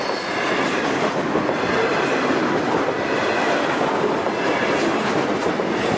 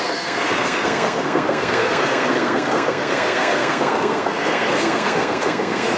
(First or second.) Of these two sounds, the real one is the first